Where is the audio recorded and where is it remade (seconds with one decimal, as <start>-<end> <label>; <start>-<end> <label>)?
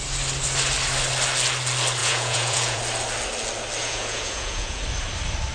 0.0-2.0 recorded; 2.0-2.8 remade; 2.8-3.8 recorded; 3.8-4.8 remade; 4.8-5.5 recorded